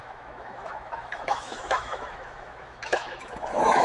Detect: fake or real fake